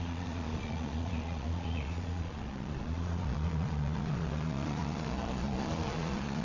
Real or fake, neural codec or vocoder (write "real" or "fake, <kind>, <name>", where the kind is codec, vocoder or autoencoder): fake, vocoder, Vocos